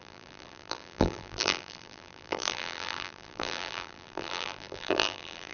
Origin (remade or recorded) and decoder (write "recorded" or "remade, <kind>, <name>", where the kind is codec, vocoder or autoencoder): remade, vocoder, BigVGAN v2